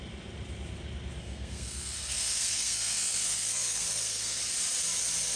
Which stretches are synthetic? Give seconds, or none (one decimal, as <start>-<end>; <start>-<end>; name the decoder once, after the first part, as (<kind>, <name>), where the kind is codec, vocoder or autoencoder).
1.2-4.4 (codec, SNAC)